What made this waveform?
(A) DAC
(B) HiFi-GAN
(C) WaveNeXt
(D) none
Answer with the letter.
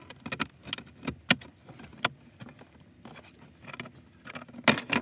D